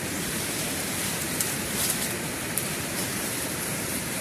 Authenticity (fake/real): fake